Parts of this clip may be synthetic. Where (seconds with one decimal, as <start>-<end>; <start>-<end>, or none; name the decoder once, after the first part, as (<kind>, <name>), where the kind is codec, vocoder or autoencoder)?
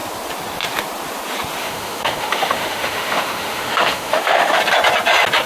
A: 1.6-4.6 (autoencoder, DAC-VAE)